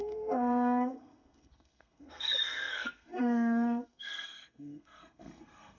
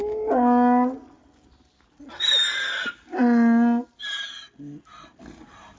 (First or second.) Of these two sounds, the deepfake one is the first